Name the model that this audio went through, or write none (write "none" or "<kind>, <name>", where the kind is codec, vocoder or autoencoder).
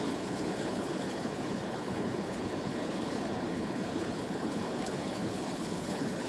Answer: codec, HILCodec